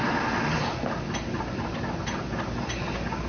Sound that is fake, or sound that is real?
real